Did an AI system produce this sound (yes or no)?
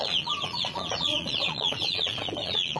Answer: yes